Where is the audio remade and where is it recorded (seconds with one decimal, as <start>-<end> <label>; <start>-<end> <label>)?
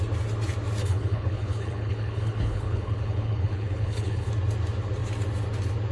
0.0-0.8 recorded; 0.8-4.3 remade; 4.3-5.9 recorded